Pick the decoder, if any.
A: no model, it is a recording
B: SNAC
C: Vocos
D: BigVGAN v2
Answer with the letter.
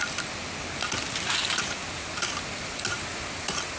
A